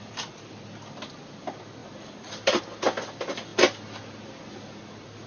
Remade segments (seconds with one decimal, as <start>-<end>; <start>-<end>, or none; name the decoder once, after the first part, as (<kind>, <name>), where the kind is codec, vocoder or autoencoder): 1.8-2.6 (vocoder, BigVGAN v2)